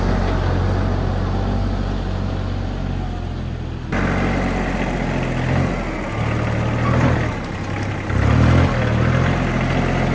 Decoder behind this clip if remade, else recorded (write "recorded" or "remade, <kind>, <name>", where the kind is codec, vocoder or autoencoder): recorded